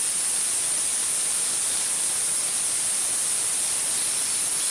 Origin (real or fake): fake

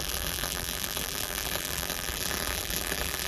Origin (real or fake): fake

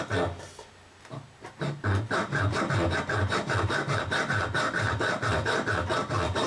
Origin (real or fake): real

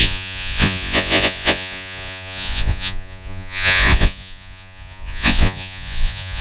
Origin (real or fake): fake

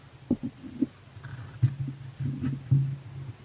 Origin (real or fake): real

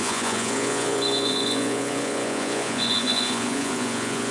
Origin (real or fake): fake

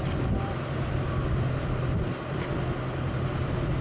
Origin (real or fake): real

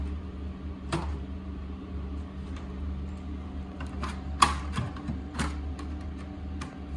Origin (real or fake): real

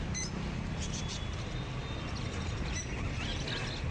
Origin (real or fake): real